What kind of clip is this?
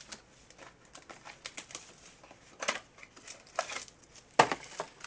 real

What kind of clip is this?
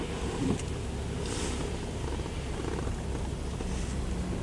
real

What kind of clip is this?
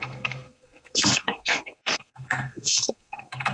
fake